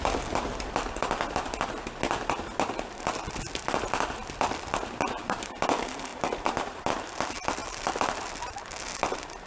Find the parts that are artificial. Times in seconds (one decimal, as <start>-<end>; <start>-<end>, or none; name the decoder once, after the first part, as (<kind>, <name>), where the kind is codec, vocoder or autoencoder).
none